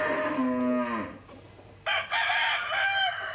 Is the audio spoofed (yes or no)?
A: no